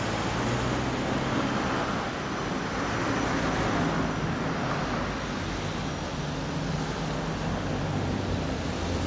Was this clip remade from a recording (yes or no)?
no